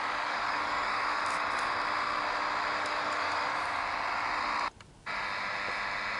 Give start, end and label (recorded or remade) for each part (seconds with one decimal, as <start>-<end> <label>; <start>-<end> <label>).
0.0-1.2 remade; 1.2-2.8 recorded; 2.8-3.8 remade; 3.8-6.2 recorded